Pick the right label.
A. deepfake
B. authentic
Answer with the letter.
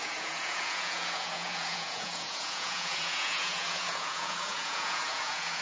A